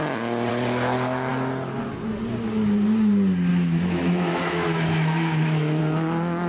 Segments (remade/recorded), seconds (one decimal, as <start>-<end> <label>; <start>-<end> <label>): 0.0-3.5 recorded; 3.5-5.8 remade; 5.8-6.5 recorded